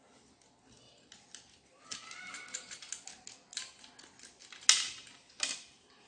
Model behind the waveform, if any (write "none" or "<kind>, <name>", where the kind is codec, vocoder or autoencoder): none